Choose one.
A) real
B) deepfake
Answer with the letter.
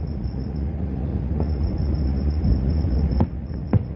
B